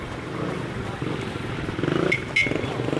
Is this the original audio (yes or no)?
yes